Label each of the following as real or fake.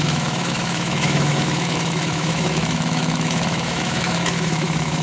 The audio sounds fake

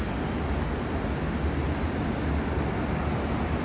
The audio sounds real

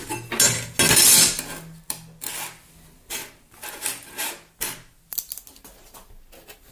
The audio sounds real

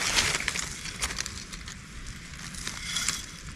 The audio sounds real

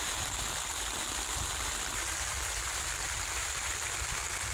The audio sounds real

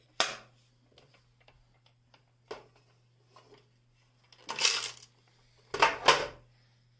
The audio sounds real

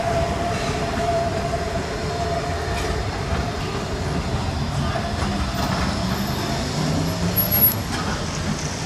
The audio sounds real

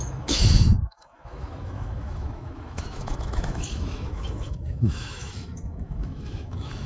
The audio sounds fake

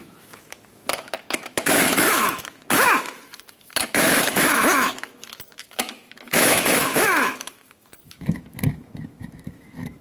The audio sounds fake